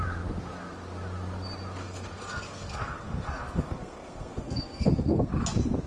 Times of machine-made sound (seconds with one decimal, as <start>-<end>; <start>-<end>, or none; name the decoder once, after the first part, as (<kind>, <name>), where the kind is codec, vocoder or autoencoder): 1.8-5.3 (codec, SNAC)